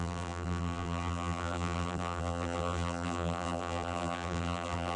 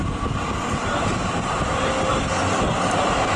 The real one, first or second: second